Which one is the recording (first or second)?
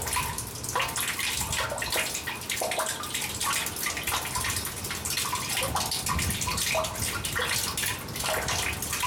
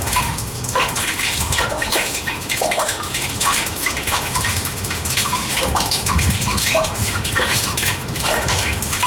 first